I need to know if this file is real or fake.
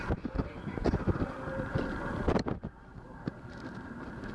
fake